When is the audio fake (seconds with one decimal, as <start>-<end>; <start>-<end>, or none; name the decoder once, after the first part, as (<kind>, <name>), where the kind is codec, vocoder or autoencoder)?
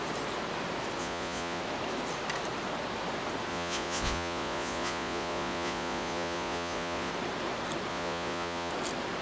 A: 1.0-1.6 (vocoder, Vocos); 3.5-7.1; 7.9-8.7